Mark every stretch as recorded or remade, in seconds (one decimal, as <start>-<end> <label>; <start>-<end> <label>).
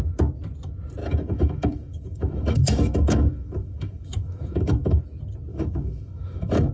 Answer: 0.0-1.0 recorded; 1.0-5.0 remade; 5.0-5.5 recorded; 5.5-6.7 remade